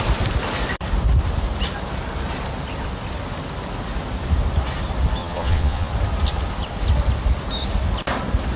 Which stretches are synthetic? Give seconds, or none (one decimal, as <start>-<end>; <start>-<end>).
5.2-5.9